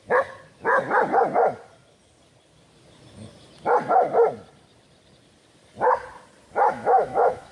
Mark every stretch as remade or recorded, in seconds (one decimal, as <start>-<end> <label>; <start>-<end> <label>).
0.0-6.7 recorded; 6.7-7.5 remade